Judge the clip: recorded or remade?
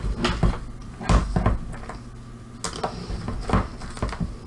recorded